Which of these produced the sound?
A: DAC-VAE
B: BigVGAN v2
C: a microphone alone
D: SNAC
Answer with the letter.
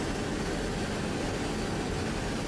C